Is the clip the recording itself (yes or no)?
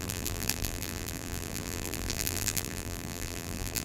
no